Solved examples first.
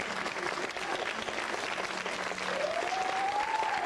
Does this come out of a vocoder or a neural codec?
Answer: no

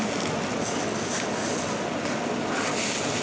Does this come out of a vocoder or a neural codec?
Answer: no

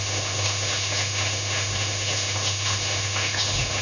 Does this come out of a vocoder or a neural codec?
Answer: yes